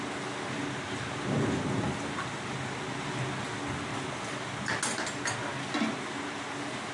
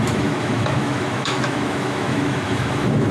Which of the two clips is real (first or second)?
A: first